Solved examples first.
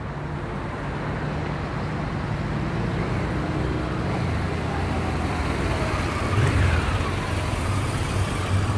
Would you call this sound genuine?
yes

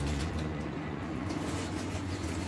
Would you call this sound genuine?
no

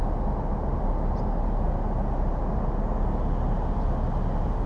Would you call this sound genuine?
yes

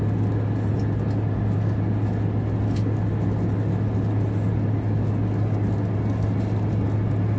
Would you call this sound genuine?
yes